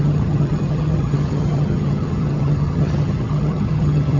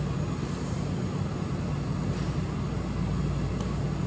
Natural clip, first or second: second